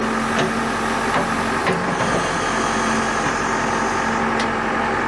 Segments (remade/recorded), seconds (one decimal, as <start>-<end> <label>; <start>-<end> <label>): 0.0-5.1 recorded